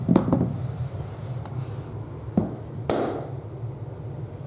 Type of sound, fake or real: real